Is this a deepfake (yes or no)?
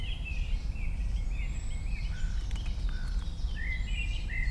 no